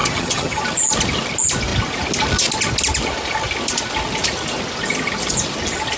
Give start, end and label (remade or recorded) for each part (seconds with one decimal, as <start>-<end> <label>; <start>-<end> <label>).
0.0-0.6 remade; 0.6-6.0 recorded